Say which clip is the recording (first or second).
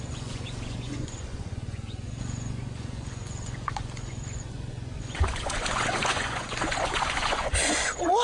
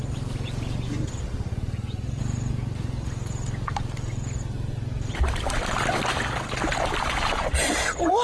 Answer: second